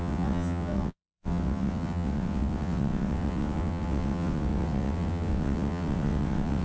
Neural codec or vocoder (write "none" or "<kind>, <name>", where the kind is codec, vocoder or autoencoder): vocoder, WaveNeXt